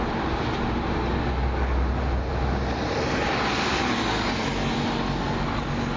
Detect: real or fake real